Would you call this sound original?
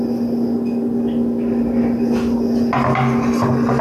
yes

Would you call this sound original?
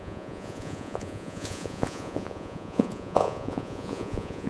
no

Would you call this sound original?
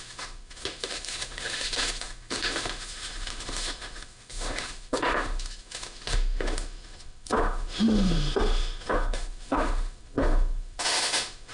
no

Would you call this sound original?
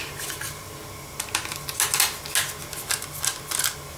yes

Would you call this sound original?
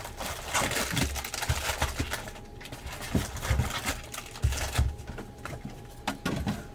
yes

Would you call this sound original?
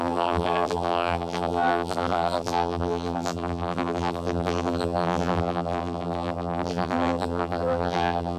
no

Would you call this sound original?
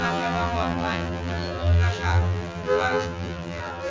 no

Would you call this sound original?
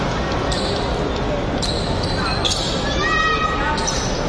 yes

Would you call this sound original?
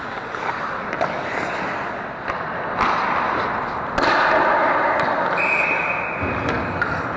yes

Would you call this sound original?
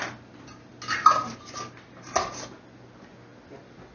yes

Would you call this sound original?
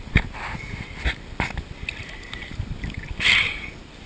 yes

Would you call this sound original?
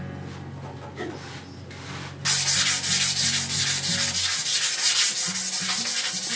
yes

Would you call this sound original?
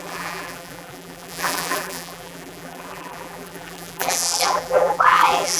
no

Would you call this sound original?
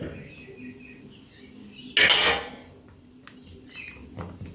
yes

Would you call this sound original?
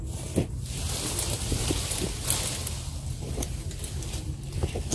yes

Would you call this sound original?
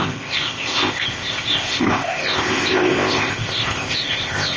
no